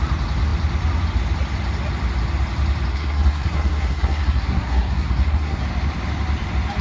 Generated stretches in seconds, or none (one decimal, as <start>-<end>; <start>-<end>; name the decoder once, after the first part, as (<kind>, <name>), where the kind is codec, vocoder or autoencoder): 2.9-5.6 (codec, SNAC)